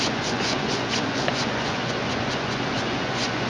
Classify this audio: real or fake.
fake